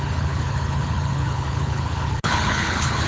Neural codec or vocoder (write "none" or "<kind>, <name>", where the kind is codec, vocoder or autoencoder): codec, HILCodec